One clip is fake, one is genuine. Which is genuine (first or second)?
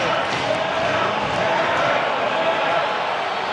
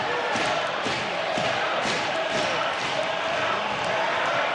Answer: first